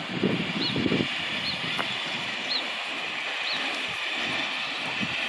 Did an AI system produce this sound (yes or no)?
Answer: no